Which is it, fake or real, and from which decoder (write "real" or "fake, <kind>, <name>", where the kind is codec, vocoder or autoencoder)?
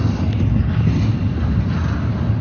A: real